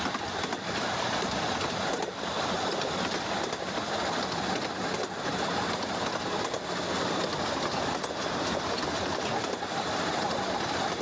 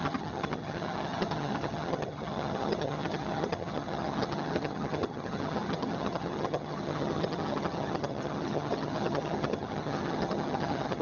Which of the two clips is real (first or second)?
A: first